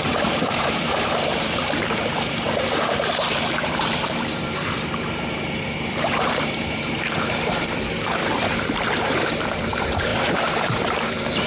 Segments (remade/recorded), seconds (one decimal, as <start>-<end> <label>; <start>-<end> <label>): 0.0-11.5 remade